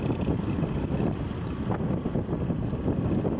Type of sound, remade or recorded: recorded